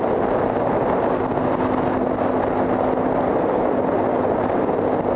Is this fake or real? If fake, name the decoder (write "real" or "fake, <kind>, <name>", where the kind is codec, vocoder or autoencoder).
real